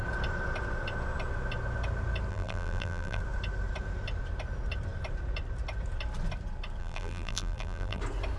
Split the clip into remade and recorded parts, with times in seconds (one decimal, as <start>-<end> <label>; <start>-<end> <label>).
0.0-2.3 recorded; 2.3-3.2 remade; 3.2-6.8 recorded; 6.8-8.0 remade; 8.0-8.4 recorded